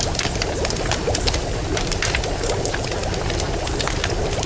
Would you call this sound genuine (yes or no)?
yes